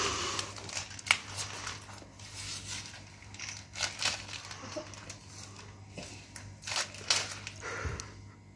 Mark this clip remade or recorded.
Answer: recorded